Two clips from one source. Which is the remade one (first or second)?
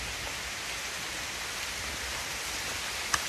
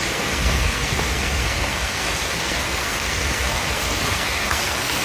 second